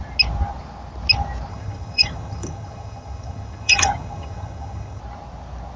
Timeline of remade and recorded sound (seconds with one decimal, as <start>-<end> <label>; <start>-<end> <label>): 0.0-1.5 recorded; 1.5-5.0 remade; 5.0-5.8 recorded